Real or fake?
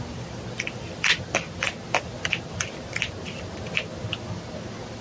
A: fake